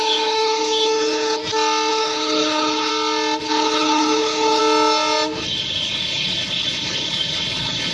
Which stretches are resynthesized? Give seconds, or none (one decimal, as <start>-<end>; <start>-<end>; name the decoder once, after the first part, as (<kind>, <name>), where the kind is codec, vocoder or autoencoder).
0.0-1.4 (codec, HILCodec); 1.9-2.9; 3.4-4.6; 5.4-7.9